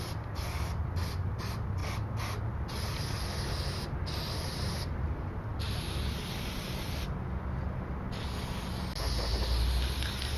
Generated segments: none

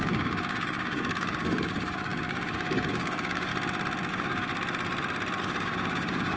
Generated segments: 0.0-3.5 (codec, DAC); 4.1-4.5; 5.4-6.4

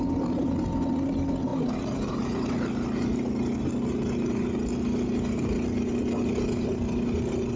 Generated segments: none

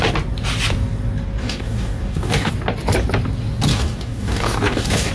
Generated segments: 1.4-2.5 (codec, DAC); 3.7-5.1

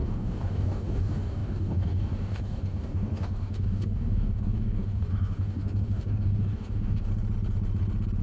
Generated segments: 0.0-7.1 (codec, DAC)

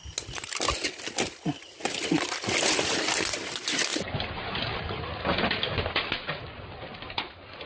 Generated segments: none

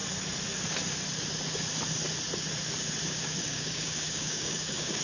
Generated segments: 3.0-5.0 (codec, DAC)

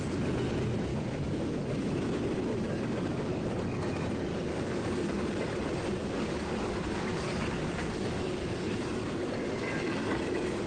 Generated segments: 0.9-2.0 (codec, DAC); 2.5-3.6; 4.3-5.2; 6.0-10.2